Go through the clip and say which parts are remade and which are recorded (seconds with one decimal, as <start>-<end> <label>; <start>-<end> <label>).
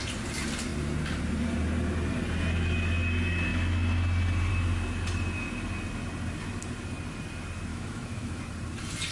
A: 0.0-7.7 recorded; 7.7-8.4 remade; 8.4-9.1 recorded